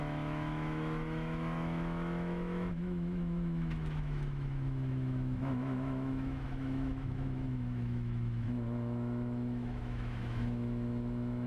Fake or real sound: fake